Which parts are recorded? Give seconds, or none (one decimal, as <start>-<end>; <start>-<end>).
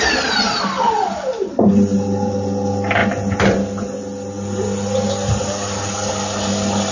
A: 0.0-6.9